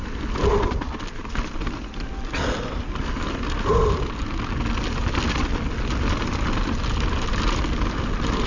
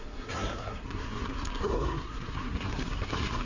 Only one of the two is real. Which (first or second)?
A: first